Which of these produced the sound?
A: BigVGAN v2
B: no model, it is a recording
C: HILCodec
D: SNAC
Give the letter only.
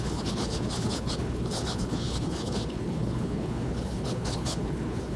C